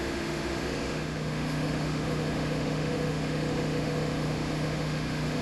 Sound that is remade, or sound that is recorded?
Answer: remade